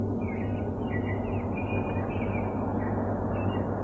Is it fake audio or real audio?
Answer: real